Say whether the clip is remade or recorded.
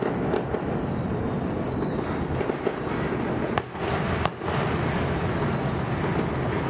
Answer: recorded